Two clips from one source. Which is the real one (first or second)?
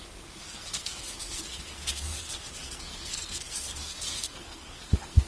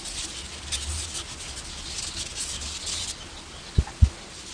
second